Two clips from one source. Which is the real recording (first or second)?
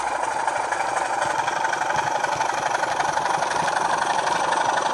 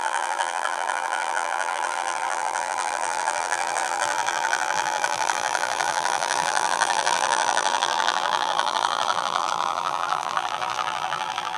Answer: first